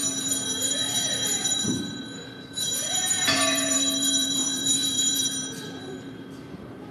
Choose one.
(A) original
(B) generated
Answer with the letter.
B